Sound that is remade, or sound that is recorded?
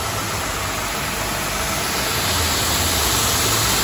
recorded